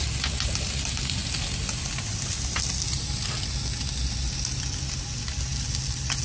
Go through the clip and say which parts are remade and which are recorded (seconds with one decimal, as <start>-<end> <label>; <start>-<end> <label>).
0.0-6.2 recorded